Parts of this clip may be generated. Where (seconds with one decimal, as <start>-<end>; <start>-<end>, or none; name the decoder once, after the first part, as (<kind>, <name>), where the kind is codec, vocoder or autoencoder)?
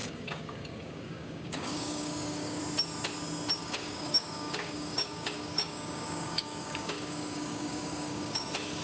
0.0-2.6 (codec, DAC); 3.6-8.4